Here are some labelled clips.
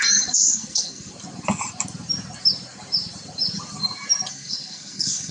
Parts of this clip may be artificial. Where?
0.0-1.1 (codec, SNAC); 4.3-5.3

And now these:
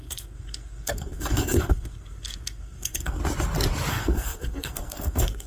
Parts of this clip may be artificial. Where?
0.0-3.2 (codec, SNAC); 3.9-5.5

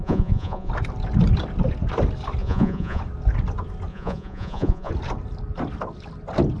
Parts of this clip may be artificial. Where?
0.0-0.7 (vocoder, Vocos); 2.4-3.0; 3.9-4.9

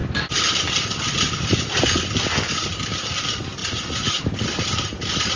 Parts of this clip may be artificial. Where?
3.6-4.2 (vocoder, Vocos)

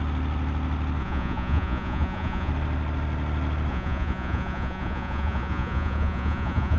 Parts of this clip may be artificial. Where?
1.0-2.5 (vocoder, Vocos); 3.7-6.8

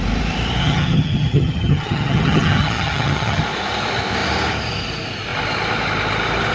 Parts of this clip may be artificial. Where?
0.6-3.4 (vocoder, HiFi-GAN)

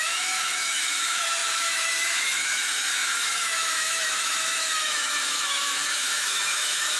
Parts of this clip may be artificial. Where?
0.0-7.0 (autoencoder, DAC-VAE)